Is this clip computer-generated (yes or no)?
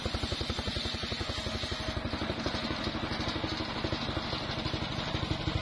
no